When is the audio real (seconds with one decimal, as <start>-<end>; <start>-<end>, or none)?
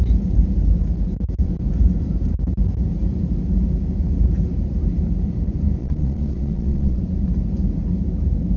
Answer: 0.0-5.8; 7.0-8.6